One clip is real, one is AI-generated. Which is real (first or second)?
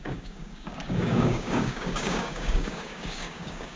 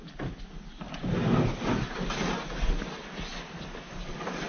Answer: second